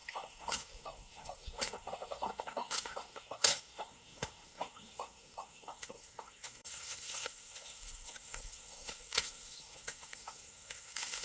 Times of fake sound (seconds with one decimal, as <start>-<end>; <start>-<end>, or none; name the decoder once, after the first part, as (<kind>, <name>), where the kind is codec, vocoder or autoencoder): 0.0-11.2 (codec, SNAC)